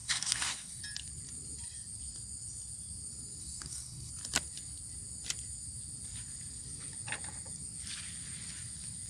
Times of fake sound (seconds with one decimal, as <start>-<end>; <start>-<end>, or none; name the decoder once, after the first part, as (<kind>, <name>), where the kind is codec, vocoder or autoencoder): 0.0-0.8 (codec, SNAC); 3.4-4.1